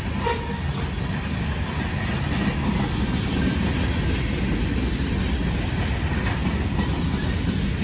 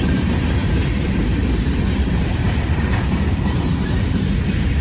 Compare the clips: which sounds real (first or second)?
first